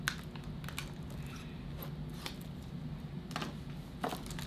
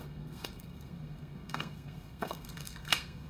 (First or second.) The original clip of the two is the first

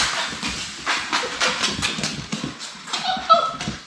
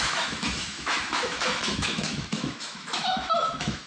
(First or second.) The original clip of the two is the first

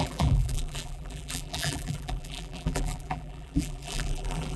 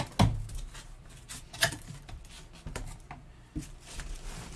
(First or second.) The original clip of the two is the second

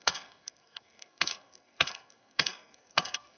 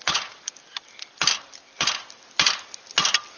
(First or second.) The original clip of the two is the second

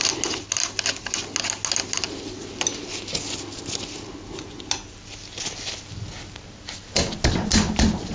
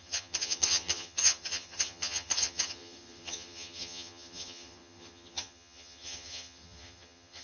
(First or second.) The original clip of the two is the first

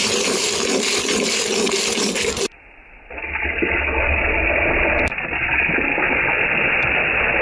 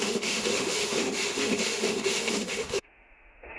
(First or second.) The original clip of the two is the first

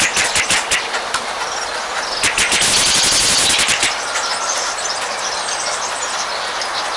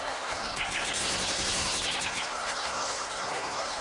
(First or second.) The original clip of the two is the first